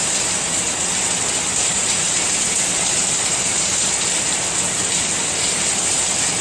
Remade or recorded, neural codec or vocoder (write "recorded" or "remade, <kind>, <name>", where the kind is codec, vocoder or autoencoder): recorded